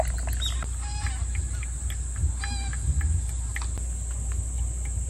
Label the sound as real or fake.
real